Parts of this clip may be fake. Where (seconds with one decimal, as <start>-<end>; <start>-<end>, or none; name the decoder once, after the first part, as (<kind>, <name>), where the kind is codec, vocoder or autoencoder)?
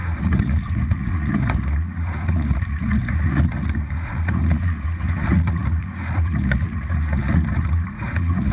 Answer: 0.0-8.5 (vocoder, Vocos)